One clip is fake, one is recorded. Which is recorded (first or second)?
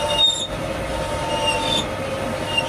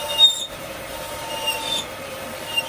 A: first